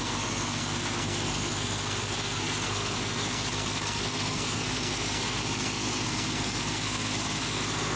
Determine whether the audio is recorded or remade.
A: remade